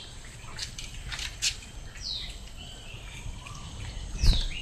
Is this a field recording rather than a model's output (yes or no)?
yes